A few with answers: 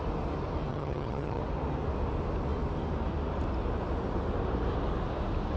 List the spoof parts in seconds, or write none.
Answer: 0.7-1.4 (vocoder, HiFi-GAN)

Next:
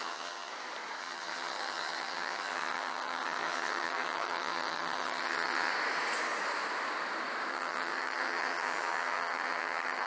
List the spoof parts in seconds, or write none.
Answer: 0.0-0.5 (vocoder, HiFi-GAN); 1.0-5.7; 7.5-10.1

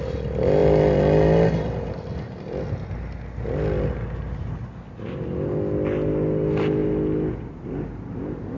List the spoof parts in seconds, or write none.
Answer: none

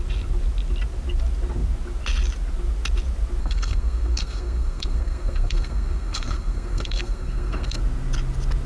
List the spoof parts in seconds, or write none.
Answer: 3.4-7.8 (codec, SNAC)

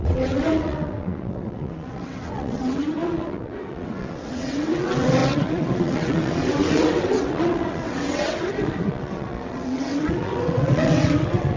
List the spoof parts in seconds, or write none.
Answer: 0.0-11.6 (vocoder, WaveNeXt)

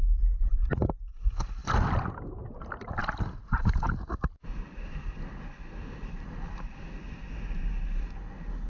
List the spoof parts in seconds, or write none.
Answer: none

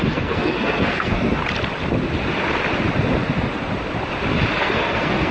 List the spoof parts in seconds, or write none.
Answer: 0.0-1.4 (codec, SNAC); 4.6-5.3

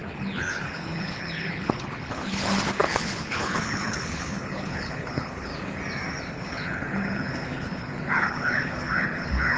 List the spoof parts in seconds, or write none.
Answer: 0.0-5.5 (codec, HILCodec); 6.2-9.6